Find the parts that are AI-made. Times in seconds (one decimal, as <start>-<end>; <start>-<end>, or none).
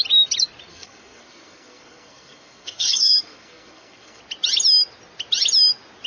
0.7-4.2